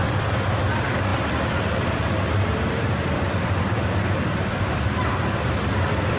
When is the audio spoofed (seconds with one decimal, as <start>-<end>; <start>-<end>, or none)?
none